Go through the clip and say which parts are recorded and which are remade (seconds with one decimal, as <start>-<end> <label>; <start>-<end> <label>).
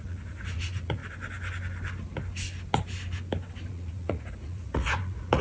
0.0-1.0 remade; 1.0-3.7 recorded; 3.7-5.4 remade